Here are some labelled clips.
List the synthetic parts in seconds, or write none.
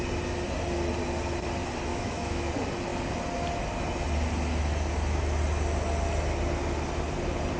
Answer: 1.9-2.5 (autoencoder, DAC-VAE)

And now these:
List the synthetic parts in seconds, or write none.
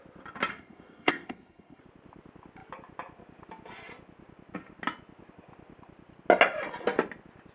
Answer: 0.5-1.8 (codec, SNAC)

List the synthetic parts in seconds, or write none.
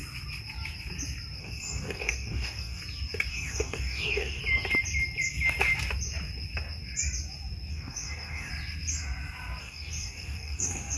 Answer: 1.4-2.8 (codec, DAC); 3.3-4.4; 7.7-8.5; 9.6-11.0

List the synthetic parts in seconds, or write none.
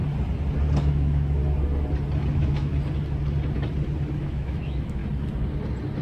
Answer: 0.8-1.4 (autoencoder, DAC-VAE); 2.3-2.7; 4.2-5.0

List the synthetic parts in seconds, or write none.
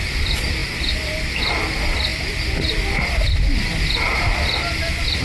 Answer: none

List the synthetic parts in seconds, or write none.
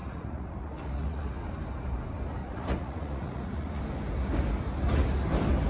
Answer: 0.0-1.4 (vocoder, Vocos); 2.4-3.8